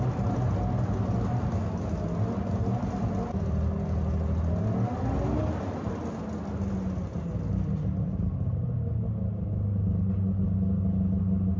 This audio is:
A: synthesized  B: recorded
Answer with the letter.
B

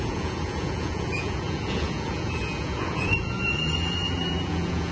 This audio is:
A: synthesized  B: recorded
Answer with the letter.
A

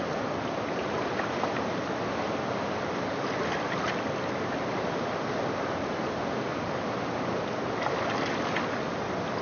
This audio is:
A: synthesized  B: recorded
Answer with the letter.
B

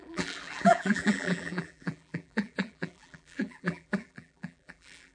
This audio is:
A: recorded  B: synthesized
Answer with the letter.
B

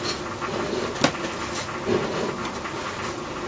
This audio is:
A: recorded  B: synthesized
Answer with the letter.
A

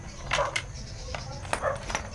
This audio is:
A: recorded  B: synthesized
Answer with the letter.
A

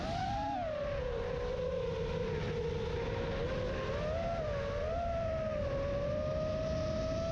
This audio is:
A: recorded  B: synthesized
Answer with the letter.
A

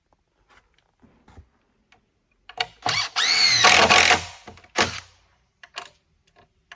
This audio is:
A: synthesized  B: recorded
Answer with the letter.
B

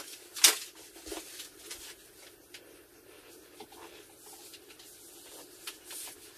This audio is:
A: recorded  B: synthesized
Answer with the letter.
A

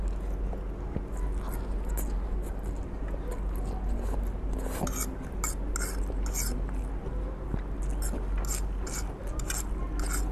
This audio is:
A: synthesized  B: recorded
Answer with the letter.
B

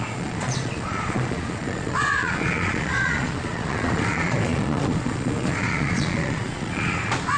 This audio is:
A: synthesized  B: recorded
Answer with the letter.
A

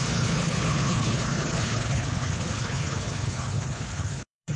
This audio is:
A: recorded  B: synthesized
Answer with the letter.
B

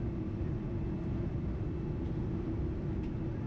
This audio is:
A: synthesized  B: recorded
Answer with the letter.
B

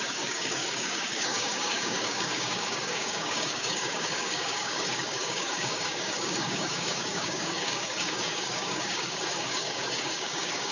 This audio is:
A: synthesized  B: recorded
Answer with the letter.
A